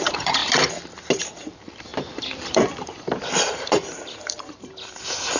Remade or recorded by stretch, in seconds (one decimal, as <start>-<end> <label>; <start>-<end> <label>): 0.0-0.4 remade; 0.4-1.2 recorded; 1.2-5.4 remade